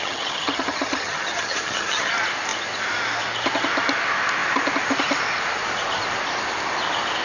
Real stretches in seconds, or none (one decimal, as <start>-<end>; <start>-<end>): 2.1-7.2